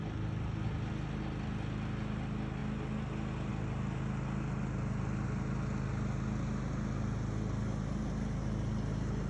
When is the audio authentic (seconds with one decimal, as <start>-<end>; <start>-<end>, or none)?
0.0-9.3